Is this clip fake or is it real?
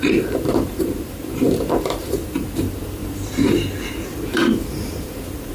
fake